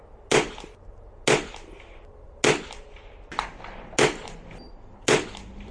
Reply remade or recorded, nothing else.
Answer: recorded